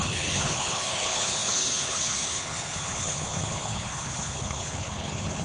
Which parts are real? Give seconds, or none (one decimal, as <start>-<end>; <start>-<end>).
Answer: none